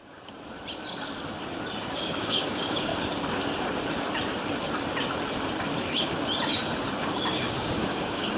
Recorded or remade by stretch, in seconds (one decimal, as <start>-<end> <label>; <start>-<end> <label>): 0.0-1.8 recorded; 1.8-2.9 remade; 2.9-7.0 recorded; 7.0-8.4 remade